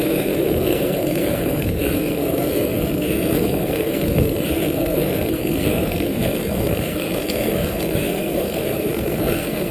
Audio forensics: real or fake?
fake